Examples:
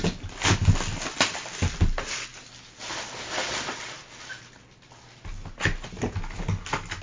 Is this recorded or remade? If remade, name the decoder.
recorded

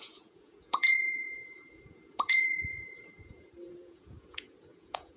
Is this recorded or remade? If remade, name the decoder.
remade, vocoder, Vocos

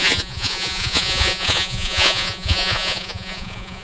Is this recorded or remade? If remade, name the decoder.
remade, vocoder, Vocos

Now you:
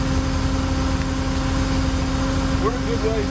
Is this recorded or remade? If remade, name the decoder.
recorded